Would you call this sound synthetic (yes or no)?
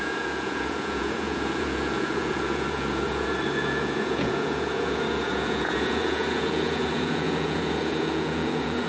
yes